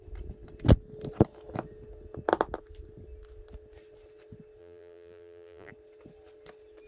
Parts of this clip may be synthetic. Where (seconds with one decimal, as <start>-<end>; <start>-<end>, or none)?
4.6-5.7